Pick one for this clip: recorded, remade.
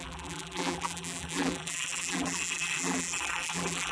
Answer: remade